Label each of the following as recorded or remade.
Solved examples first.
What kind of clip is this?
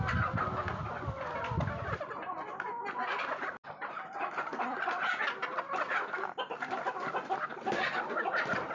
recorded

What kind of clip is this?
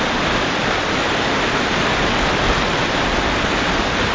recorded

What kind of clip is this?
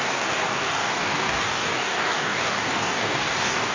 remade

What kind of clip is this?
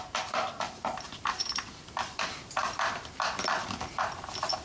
remade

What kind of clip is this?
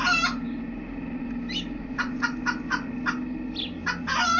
recorded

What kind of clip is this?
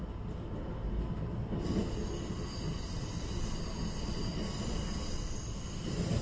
recorded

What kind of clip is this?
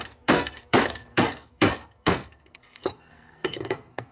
remade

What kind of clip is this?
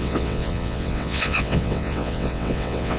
remade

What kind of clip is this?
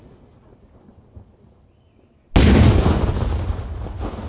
recorded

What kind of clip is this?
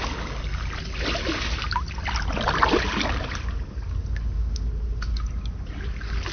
recorded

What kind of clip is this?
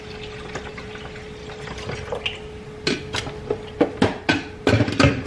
recorded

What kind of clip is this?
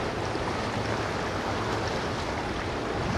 remade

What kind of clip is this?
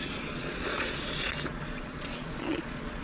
remade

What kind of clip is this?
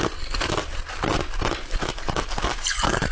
recorded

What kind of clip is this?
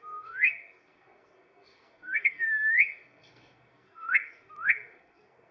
remade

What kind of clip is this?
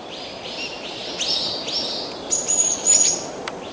recorded